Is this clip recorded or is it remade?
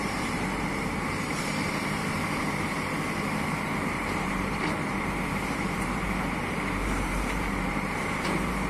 remade